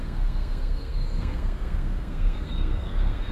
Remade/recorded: remade